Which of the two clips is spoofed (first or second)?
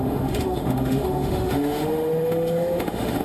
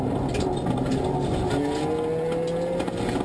first